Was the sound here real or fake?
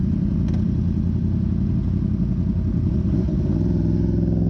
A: real